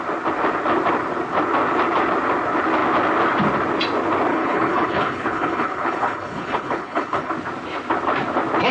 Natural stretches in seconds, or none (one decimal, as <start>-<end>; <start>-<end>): 0.0-4.3; 7.3-8.7